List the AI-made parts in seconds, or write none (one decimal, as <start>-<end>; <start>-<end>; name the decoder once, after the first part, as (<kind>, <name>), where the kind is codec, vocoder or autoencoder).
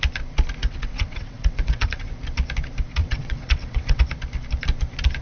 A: 0.6-2.1 (vocoder, WaveNeXt); 3.0-4.0